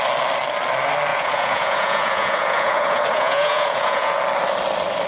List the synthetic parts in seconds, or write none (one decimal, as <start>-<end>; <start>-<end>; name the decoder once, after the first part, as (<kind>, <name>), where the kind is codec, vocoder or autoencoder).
1.1-4.2 (vocoder, Vocos)